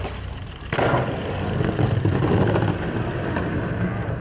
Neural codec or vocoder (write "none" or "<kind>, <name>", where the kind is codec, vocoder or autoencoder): none